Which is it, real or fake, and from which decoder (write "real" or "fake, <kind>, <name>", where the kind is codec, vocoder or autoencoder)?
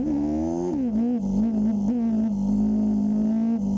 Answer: real